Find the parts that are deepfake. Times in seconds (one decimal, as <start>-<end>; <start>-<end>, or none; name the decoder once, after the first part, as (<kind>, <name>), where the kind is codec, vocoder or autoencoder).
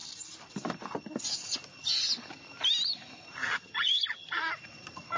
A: 3.4-4.4 (vocoder, HiFi-GAN)